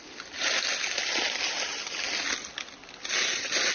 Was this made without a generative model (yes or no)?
yes